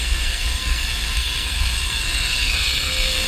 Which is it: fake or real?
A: fake